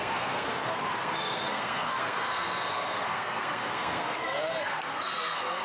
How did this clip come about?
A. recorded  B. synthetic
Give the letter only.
B